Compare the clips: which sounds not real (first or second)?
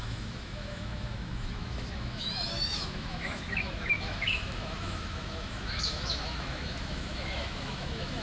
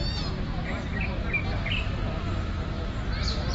first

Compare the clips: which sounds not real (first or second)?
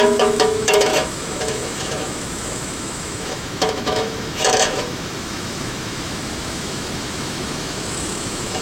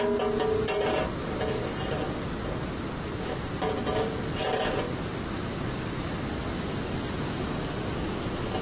first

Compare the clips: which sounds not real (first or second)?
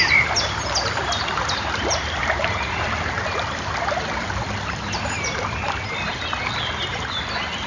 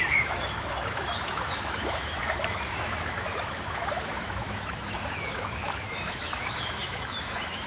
second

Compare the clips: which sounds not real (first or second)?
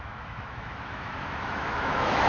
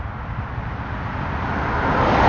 first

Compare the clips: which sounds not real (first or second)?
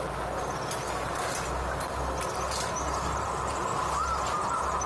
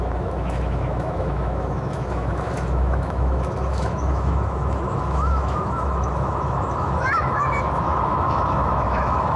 second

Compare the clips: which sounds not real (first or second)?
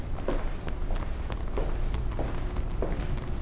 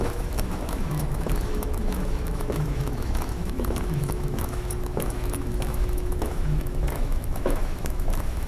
second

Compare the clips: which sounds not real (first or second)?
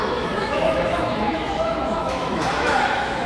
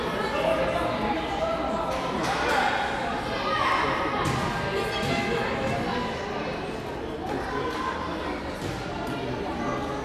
first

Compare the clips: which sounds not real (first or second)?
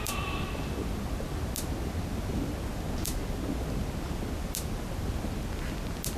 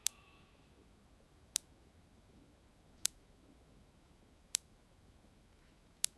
second